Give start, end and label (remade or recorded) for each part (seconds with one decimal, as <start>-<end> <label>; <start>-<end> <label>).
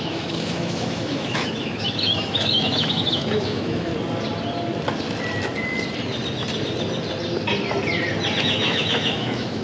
0.0-3.9 remade; 3.9-8.4 recorded; 8.4-9.6 remade